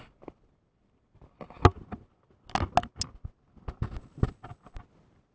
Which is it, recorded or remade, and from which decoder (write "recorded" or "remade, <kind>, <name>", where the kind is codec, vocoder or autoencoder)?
recorded